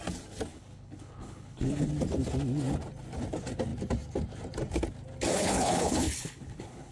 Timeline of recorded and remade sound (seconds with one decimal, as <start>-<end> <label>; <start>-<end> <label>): 0.0-0.5 recorded; 0.5-1.9 remade; 1.9-5.3 recorded; 5.3-6.9 remade